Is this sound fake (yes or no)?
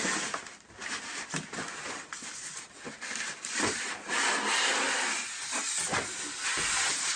no